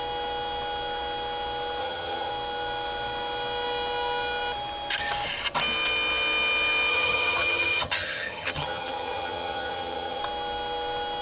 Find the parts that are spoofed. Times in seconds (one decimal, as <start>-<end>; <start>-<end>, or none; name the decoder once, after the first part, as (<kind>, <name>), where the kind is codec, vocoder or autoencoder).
1.8-2.3 (vocoder, HiFi-GAN); 6.9-10.2